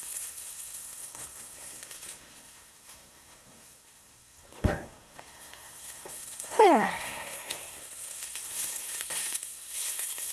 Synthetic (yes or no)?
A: yes